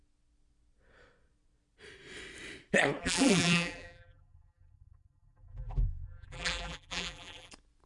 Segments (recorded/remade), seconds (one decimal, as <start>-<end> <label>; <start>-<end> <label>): 0.0-3.0 recorded; 3.0-7.5 remade; 7.5-7.9 recorded